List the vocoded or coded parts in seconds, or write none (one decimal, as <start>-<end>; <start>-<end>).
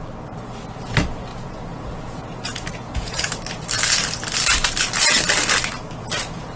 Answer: 1.3-3.4